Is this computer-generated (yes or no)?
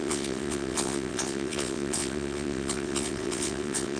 yes